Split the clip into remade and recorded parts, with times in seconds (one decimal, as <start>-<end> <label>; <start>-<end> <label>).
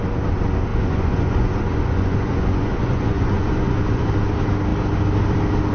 0.0-0.7 recorded; 0.7-4.1 remade; 4.1-5.7 recorded